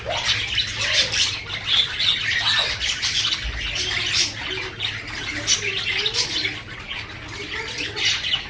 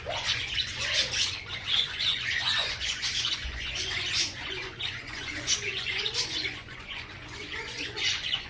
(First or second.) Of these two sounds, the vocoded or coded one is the second